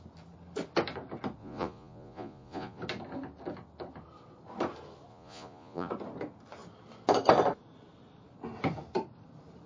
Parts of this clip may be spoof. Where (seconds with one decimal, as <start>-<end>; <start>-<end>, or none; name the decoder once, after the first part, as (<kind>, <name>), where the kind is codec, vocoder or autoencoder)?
1.4-2.8 (vocoder, Vocos); 5.1-5.9

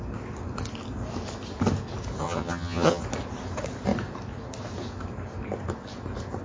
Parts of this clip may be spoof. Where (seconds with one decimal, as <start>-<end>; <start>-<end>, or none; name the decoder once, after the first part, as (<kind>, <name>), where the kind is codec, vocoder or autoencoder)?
2.2-3.0 (vocoder, HiFi-GAN)

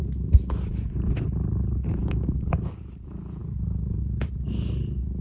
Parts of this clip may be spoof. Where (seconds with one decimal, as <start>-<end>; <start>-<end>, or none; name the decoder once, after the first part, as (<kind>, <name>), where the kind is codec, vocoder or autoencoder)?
2.0-2.8 (codec, DAC)

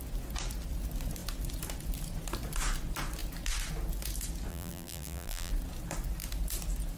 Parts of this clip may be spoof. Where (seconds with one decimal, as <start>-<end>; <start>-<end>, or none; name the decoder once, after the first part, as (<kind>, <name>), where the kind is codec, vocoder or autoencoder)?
4.5-5.5 (vocoder, BigVGAN v2)

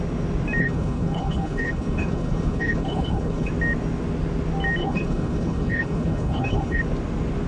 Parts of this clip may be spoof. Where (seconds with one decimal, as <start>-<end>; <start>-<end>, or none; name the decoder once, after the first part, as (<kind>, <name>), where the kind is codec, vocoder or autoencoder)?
0.6-3.5 (codec, HILCodec); 4.8-6.8